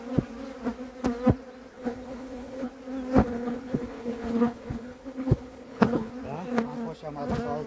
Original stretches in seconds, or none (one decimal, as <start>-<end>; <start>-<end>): 0.0-1.7; 2.7-3.2; 6.1-7.7